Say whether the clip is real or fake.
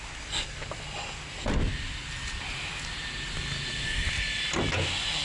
real